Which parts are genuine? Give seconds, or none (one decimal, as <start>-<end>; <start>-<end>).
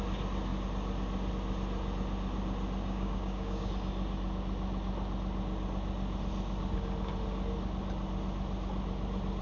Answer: 0.0-2.8; 3.7-9.4